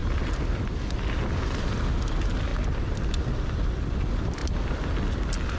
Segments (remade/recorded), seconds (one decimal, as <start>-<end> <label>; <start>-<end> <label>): 0.0-5.6 recorded